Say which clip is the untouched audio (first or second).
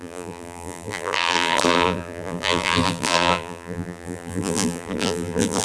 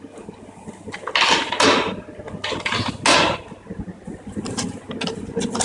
second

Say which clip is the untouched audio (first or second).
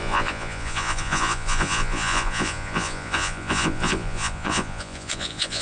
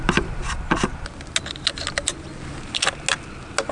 second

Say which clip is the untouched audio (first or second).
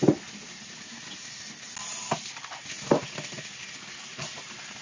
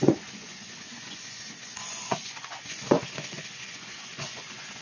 first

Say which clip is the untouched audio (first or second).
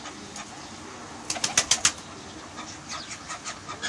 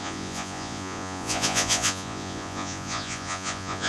first